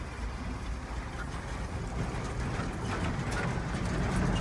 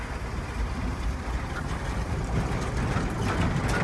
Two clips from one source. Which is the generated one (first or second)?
second